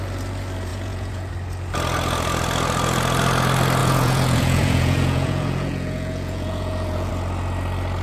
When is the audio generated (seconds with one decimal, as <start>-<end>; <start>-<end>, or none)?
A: 0.7-1.3; 3.8-7.1